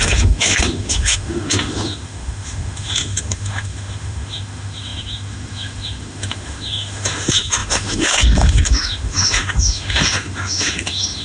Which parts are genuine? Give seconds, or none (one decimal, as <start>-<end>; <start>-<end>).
none